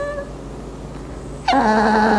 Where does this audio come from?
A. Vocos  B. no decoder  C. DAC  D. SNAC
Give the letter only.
B